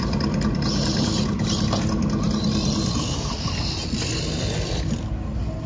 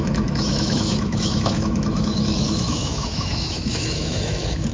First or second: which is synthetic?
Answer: second